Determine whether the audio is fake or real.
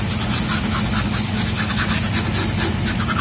real